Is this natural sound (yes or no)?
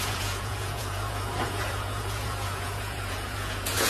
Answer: no